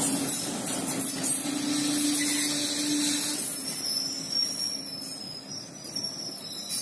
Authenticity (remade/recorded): recorded